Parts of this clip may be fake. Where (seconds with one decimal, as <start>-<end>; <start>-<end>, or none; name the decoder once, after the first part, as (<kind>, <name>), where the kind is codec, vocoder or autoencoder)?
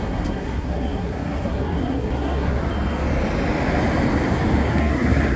0.0-2.6 (codec, SNAC); 4.7-5.4